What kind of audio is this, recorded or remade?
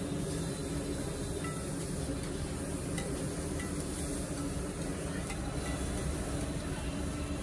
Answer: recorded